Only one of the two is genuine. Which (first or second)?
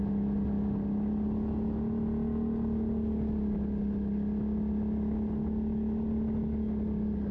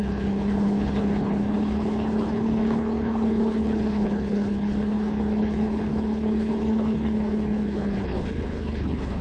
first